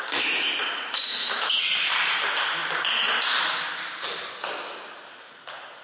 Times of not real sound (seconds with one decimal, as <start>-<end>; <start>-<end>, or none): 1.1-1.6